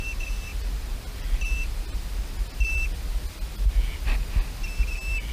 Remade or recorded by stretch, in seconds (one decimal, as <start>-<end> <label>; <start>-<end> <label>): 0.0-5.3 recorded